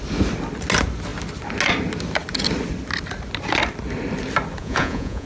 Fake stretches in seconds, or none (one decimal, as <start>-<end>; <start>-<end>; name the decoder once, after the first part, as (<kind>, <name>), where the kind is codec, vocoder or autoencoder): 4.6-5.3 (vocoder, Vocos)